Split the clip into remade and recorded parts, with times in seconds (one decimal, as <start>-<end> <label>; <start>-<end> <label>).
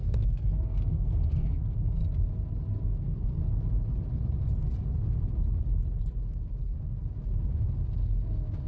0.0-2.0 remade; 2.0-2.7 recorded; 2.7-3.4 remade; 3.4-8.7 recorded